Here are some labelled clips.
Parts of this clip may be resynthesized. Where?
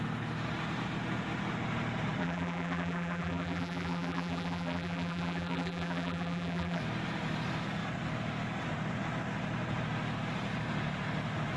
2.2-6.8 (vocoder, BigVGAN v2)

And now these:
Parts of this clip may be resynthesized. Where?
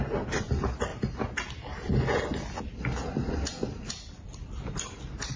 none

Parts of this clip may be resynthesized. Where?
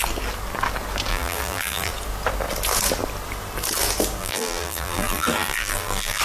1.1-1.9 (vocoder, BigVGAN v2); 4.2-6.2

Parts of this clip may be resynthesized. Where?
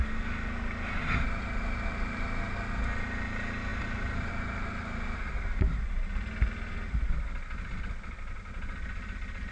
3.7-4.3 (vocoder, BigVGAN v2)